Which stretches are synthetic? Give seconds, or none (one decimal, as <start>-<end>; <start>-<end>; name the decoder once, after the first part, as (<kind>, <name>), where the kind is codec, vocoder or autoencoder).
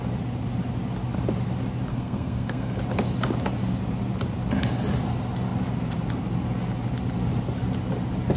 1.9-2.8 (codec, SNAC)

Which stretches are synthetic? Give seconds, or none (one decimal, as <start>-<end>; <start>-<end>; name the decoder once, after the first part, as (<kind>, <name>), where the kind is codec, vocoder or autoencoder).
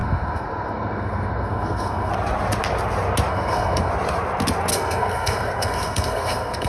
0.0-2.1 (codec, SNAC); 3.3-3.9; 4.7-6.7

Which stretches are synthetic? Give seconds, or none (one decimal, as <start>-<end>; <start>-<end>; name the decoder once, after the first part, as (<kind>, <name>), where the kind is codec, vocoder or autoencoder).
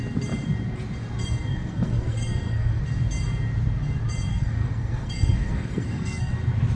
1.5-2.8 (codec, SNAC); 4.3-6.3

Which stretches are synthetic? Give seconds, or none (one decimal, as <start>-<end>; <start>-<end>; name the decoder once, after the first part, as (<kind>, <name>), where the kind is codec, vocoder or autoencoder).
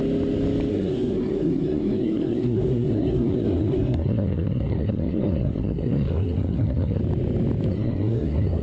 0.7-7.0 (codec, SNAC); 7.7-8.6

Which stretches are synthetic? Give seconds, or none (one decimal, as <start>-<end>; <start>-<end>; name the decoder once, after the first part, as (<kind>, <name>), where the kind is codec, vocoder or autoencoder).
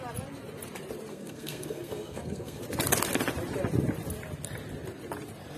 1.1-2.6 (codec, SNAC)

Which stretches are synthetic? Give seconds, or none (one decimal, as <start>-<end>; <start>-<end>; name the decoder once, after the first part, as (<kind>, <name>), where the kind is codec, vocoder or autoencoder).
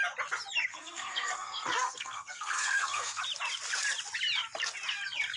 0.7-3.2 (codec, SNAC)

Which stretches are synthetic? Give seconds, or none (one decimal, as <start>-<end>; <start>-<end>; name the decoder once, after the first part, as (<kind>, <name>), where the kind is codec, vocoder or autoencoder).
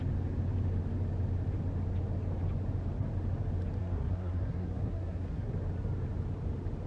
3.8-5.5 (codec, SNAC)